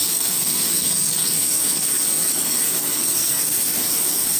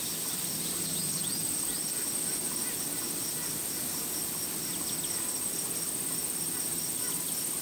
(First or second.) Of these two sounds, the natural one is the second